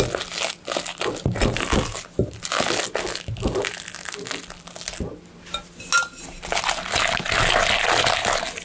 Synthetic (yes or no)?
no